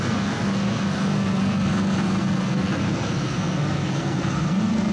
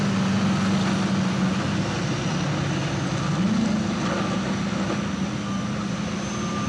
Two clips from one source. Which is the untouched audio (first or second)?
second